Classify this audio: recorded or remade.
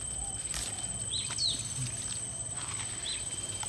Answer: recorded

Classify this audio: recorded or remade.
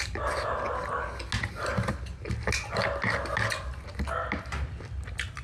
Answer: recorded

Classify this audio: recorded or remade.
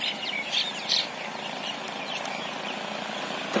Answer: recorded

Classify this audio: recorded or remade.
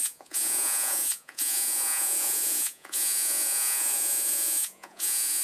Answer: remade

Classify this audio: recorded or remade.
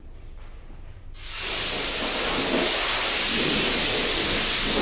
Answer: recorded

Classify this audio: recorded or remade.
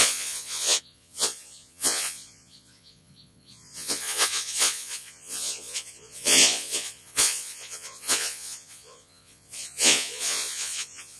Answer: remade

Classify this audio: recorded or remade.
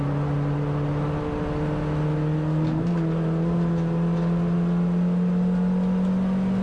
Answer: recorded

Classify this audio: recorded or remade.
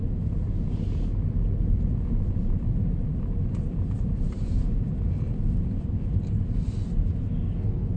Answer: recorded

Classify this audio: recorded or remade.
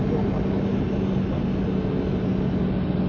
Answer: recorded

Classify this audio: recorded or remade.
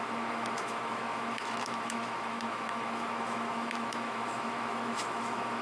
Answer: remade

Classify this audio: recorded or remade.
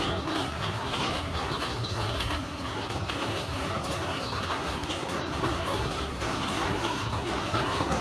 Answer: remade